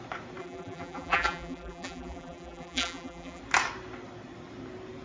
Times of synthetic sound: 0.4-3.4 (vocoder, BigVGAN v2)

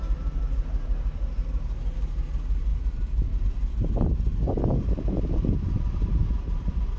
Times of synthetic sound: 0.0-4.3 (vocoder, BigVGAN v2); 4.8-7.0

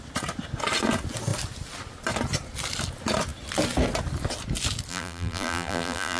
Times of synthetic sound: 4.9-6.2 (vocoder, BigVGAN v2)

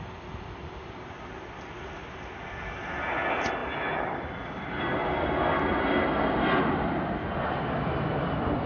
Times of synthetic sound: 3.6-4.8 (vocoder, BigVGAN v2)